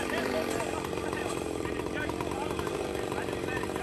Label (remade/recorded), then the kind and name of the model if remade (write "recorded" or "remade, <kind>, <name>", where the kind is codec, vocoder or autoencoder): remade, vocoder, BigVGAN v2